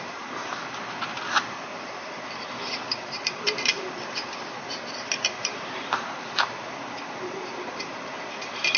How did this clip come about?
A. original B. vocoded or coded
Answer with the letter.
B